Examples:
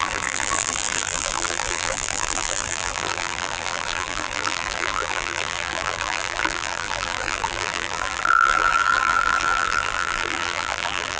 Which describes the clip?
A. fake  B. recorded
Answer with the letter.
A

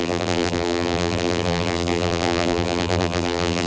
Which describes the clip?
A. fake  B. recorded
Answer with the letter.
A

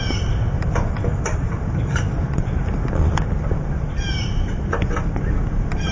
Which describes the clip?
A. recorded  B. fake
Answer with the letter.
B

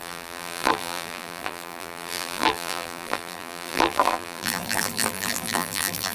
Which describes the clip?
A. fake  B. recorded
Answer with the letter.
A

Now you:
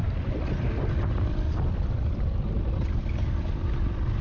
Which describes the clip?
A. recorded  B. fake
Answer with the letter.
A